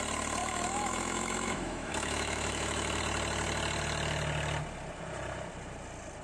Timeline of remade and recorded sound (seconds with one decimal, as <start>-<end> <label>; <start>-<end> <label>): 0.0-0.4 recorded; 0.4-3.0 remade; 3.0-6.2 recorded